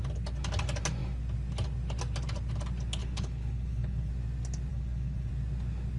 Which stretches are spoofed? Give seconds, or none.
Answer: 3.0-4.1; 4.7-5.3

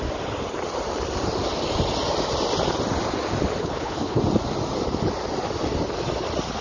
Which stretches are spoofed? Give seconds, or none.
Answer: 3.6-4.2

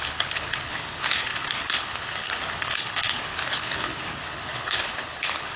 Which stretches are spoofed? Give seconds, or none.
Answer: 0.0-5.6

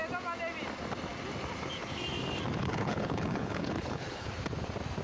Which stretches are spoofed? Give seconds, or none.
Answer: 2.6-4.3

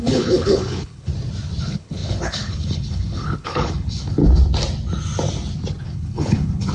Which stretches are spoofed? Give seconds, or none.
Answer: 0.0-1.1; 1.6-4.2; 5.8-6.7

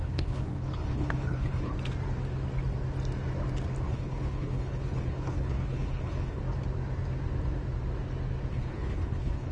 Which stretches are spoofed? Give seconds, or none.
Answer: 0.0-1.7; 3.9-6.4; 8.5-9.5

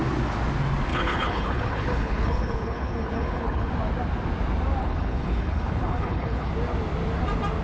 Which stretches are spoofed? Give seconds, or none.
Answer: 0.9-3.7; 4.8-6.5

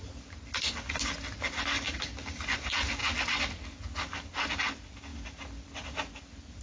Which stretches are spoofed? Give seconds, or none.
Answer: none